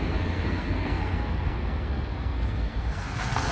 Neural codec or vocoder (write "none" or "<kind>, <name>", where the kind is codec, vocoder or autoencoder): codec, SNAC